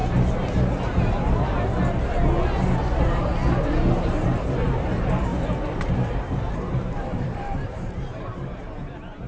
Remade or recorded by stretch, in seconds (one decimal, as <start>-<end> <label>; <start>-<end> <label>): 0.0-3.0 recorded; 3.0-3.4 remade; 3.4-4.0 recorded; 4.0-9.3 remade